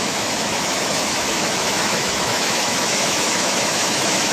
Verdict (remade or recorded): remade